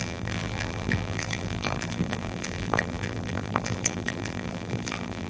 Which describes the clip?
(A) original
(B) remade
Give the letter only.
B